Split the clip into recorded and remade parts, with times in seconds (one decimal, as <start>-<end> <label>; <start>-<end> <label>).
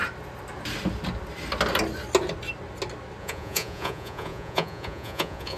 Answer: 0.0-3.2 recorded; 3.2-5.6 remade